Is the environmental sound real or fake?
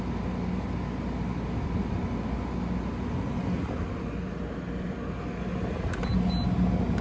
real